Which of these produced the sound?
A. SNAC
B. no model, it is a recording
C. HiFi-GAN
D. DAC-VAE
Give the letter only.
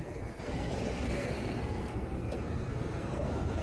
A